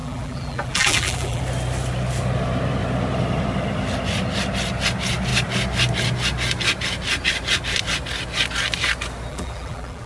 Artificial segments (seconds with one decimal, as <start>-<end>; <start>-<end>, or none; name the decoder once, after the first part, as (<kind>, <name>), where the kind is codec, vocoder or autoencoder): 0.0-1.4 (vocoder, BigVGAN v2); 9.3-10.1